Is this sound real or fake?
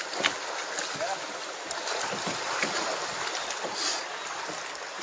real